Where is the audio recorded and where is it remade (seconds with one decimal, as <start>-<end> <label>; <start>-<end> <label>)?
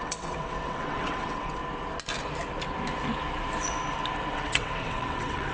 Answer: 0.0-1.6 remade; 1.6-4.3 recorded; 4.3-5.5 remade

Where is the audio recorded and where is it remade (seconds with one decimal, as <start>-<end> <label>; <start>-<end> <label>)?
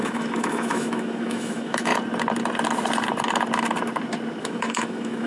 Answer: 0.0-1.9 remade; 1.9-4.4 recorded; 4.4-5.3 remade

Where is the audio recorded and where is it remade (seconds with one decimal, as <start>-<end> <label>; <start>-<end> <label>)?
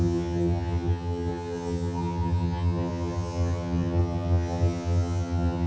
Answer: 0.0-5.7 remade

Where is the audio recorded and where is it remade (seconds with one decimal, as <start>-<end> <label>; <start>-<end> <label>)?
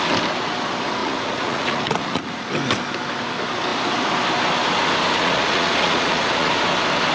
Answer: 0.0-1.0 recorded; 1.0-2.5 remade; 2.5-5.2 recorded; 5.2-6.5 remade; 6.5-7.1 recorded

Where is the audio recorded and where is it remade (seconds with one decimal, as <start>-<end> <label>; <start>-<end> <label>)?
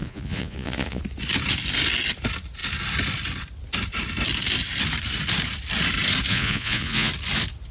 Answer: 0.0-1.0 remade; 1.0-6.3 recorded; 6.3-7.1 remade; 7.1-7.7 recorded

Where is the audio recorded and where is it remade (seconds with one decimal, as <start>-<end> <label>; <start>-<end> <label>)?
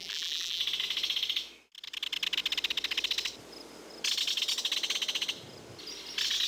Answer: 0.0-0.6 remade; 0.6-6.5 recorded